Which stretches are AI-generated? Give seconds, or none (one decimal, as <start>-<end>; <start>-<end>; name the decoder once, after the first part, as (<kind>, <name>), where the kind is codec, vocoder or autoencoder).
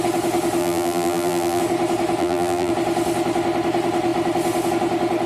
0.6-1.6 (vocoder, BigVGAN v2); 2.2-2.7